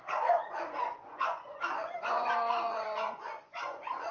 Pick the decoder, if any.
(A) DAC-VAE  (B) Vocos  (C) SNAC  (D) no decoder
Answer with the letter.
B